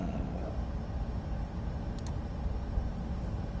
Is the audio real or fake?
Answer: real